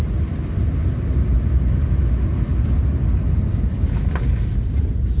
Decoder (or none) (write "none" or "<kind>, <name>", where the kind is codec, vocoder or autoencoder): vocoder, BigVGAN v2